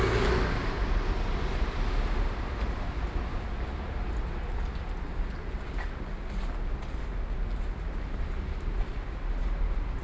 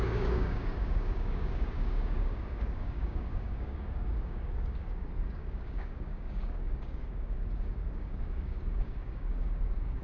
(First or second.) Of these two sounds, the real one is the first